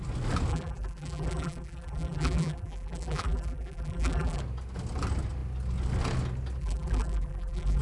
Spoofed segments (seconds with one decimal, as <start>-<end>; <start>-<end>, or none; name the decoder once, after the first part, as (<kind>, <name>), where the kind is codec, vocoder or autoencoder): 0.5-4.4 (vocoder, BigVGAN v2); 6.6-7.8